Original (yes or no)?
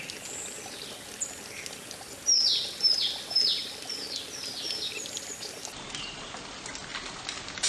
yes